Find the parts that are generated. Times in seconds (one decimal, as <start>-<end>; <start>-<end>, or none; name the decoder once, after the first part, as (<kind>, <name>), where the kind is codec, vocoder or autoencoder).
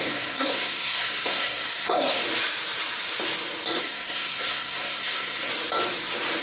0.0-2.2 (codec, SNAC); 3.8-5.5